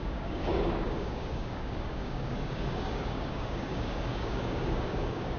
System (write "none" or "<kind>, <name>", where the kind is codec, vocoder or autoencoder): codec, DAC